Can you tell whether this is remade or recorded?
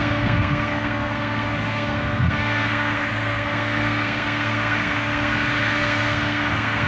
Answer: remade